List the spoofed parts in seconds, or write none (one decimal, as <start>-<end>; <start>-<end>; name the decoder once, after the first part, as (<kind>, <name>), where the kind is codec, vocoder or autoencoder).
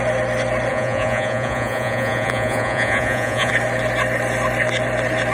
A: 0.7-3.5 (vocoder, Vocos)